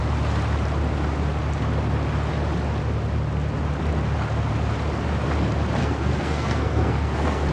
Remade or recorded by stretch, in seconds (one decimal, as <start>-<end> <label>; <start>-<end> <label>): 0.0-5.8 recorded; 5.8-7.5 remade